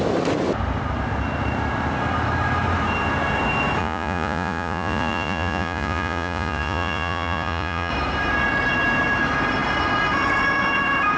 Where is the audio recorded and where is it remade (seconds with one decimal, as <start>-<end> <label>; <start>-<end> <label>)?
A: 0.0-3.8 recorded; 3.8-7.9 remade; 7.9-11.2 recorded